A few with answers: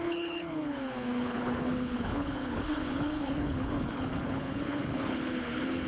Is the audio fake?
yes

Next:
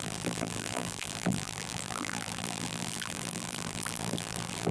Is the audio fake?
yes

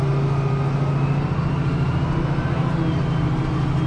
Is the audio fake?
no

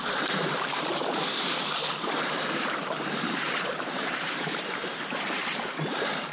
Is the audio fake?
yes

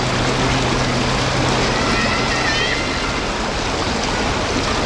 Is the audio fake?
no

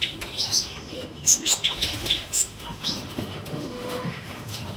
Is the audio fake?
yes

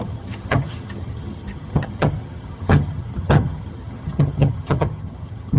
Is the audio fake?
yes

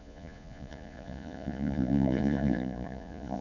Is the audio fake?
yes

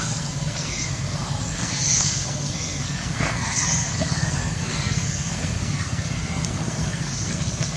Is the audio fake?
yes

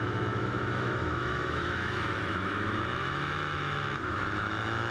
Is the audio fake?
yes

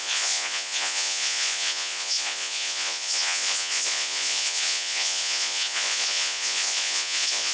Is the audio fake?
yes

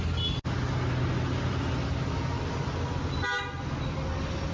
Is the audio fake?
no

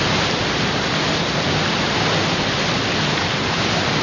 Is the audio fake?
no